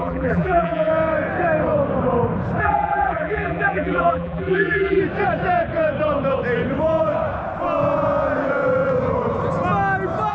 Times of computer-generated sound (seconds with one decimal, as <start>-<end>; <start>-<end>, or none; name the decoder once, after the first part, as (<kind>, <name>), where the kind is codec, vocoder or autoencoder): 0.0-0.9 (vocoder, BigVGAN v2); 2.6-5.0